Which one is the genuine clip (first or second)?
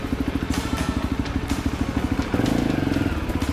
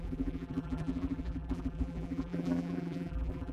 first